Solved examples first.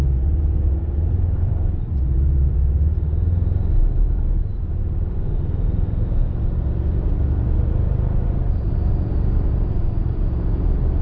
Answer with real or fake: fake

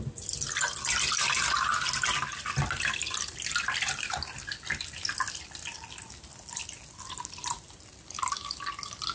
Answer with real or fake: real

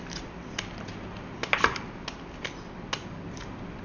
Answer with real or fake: real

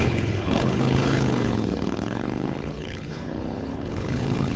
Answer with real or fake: fake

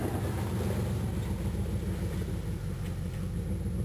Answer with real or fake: real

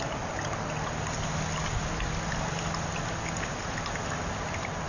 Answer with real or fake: real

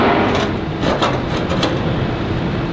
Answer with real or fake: real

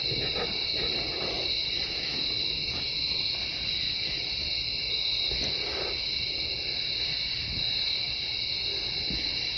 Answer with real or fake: real